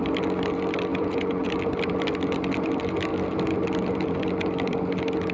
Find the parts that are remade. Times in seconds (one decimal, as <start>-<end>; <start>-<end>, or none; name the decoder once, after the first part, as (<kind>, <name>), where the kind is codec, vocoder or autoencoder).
0.9-1.5 (vocoder, Vocos)